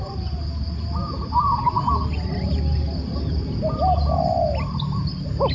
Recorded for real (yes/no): yes